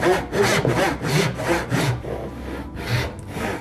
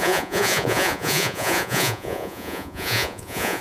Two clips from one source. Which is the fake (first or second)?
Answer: second